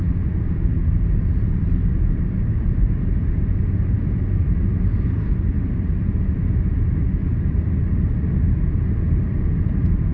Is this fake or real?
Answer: fake